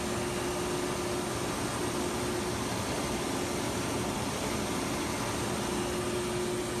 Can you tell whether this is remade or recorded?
recorded